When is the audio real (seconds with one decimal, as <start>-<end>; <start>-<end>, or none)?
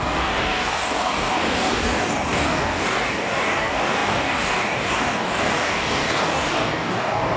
none